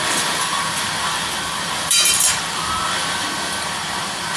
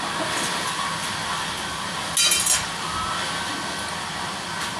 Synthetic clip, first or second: first